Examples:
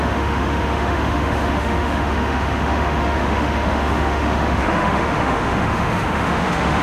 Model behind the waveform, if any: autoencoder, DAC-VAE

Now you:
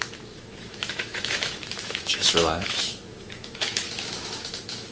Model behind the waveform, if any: autoencoder, DAC-VAE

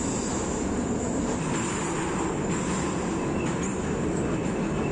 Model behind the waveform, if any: none